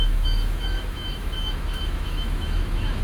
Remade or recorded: remade